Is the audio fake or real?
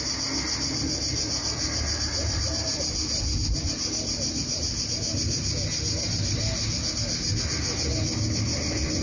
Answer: real